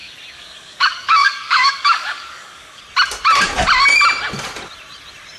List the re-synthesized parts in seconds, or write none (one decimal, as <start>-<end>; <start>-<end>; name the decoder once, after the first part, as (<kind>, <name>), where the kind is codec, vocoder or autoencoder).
0.0-2.8 (codec, DAC)

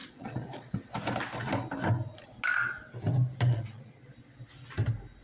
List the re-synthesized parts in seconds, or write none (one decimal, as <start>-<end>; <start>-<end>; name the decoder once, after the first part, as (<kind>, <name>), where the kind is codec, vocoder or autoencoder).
0.0-0.7 (vocoder, Vocos); 3.5-4.1